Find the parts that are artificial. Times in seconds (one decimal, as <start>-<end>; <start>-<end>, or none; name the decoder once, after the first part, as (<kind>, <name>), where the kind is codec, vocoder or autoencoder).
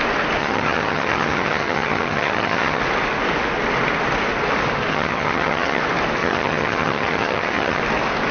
0.4-2.8 (vocoder, HiFi-GAN); 4.9-5.8; 6.2-7.8